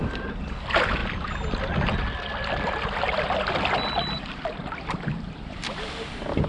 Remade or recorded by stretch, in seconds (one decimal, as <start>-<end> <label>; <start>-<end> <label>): 0.0-6.5 recorded